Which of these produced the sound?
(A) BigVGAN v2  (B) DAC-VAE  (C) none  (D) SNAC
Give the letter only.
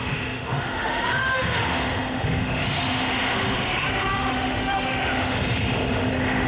B